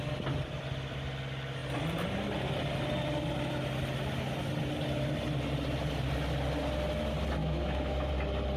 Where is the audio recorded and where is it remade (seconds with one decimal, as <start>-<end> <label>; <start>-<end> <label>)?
0.0-7.4 recorded; 7.4-8.1 remade; 8.1-8.6 recorded